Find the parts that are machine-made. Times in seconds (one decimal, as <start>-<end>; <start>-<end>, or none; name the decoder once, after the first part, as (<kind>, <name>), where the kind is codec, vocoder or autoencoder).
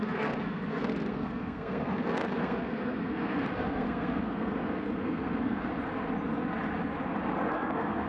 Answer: 0.0-5.7 (codec, SNAC); 7.5-8.1